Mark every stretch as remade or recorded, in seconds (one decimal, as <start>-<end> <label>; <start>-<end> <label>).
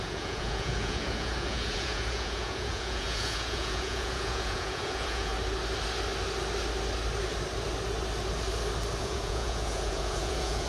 0.0-5.3 remade; 5.3-9.0 recorded; 9.0-10.7 remade